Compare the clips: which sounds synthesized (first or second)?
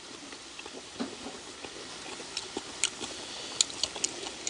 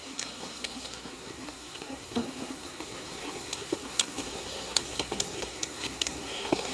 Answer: second